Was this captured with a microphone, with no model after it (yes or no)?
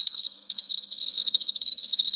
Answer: no